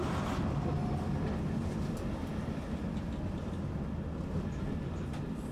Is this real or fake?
real